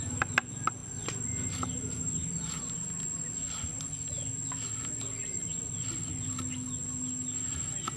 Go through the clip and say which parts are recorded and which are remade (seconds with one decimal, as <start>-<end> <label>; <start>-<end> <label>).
0.0-8.0 recorded